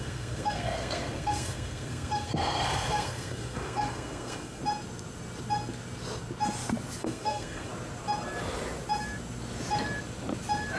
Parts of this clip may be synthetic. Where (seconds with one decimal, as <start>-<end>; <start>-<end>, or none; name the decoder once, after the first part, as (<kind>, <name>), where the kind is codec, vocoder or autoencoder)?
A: 0.0-4.6 (codec, SNAC); 7.0-7.7